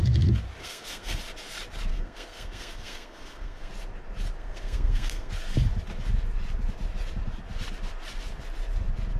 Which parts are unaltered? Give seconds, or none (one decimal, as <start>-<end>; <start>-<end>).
0.0-0.6; 1.2-1.9; 3.7-4.4; 5.3-9.2